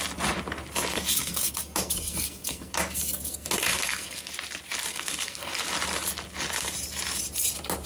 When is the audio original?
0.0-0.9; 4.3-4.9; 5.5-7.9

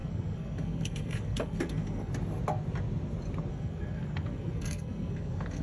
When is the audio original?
2.1-3.5

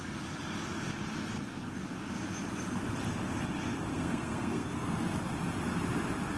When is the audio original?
0.0-3.9; 5.2-6.4

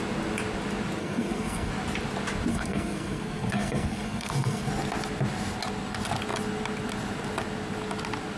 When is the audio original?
0.0-1.0; 1.7-2.5; 4.7-8.4

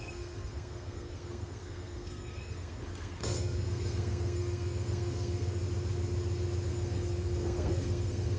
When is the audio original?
5.6-6.7